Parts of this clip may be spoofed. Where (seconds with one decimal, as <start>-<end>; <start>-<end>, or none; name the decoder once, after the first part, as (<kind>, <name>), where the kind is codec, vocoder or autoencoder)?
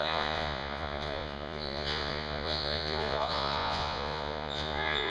0.0-5.1 (vocoder, Vocos)